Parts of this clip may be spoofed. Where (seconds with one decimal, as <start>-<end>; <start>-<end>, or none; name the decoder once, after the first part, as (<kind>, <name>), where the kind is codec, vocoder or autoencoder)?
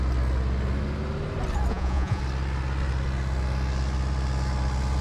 1.7-2.2 (vocoder, Vocos)